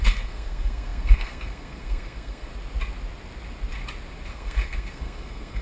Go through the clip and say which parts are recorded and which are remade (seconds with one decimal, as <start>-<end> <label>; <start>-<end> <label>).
0.0-2.5 remade; 2.5-4.3 recorded; 4.3-5.6 remade